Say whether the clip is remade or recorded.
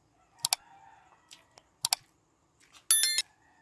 recorded